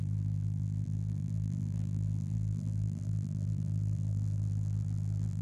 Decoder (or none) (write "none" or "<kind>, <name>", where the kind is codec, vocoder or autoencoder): vocoder, BigVGAN v2